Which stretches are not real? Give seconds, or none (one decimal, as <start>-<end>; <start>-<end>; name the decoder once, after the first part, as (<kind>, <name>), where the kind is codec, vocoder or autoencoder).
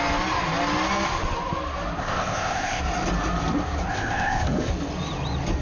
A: 2.0-2.8 (codec, ZipCodec); 3.9-4.7